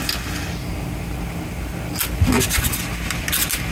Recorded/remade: recorded